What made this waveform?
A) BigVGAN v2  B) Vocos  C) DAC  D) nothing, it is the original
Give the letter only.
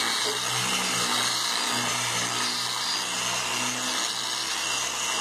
D